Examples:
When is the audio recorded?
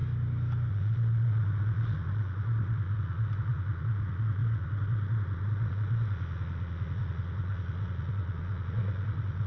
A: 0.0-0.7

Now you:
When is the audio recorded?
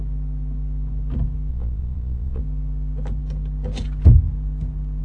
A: 0.0-1.5; 2.4-5.0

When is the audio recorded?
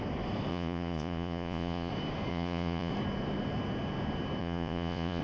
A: 0.0-0.5; 1.9-2.3; 2.9-4.4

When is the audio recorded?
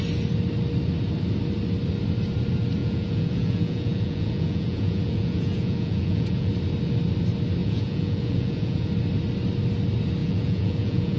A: 0.0-2.8; 6.5-7.6; 8.9-10.2